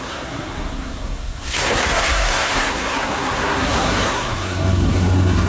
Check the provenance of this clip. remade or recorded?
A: remade